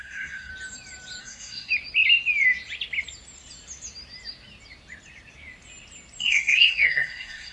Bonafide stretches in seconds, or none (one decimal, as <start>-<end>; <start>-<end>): 0.5-1.2; 1.7-6.2